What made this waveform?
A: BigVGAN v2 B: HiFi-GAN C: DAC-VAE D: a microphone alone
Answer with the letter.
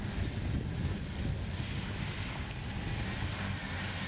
D